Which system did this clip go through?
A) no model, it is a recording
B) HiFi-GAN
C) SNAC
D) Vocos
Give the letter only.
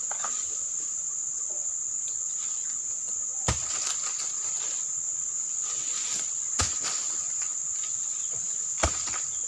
A